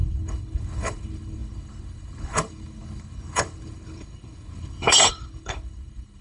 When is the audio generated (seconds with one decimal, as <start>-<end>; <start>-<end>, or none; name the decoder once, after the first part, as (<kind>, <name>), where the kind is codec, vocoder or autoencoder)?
0.0-6.2 (codec, HILCodec)